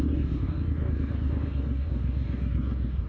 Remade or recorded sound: remade